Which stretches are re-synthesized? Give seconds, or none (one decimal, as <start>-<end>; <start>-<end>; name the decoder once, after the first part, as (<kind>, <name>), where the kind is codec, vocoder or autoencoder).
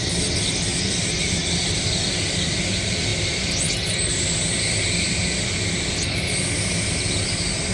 none